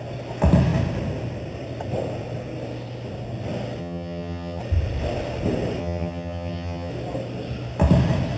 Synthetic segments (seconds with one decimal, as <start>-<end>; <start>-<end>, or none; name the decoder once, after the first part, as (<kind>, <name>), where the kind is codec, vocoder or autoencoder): 3.8-4.6 (vocoder, HiFi-GAN); 5.8-6.9